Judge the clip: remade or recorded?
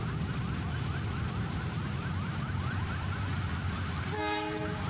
recorded